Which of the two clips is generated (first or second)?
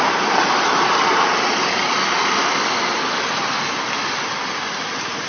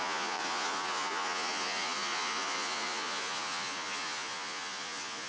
second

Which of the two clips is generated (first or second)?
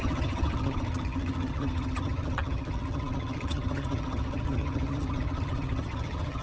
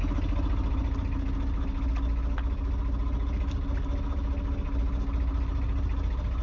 first